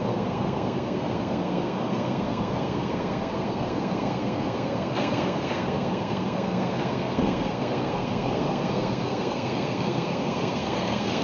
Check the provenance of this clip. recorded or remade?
remade